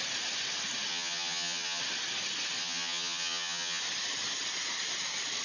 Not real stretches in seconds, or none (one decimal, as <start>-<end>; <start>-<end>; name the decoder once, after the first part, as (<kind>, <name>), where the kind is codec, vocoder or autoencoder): 0.9-1.8 (vocoder, HiFi-GAN); 2.6-3.8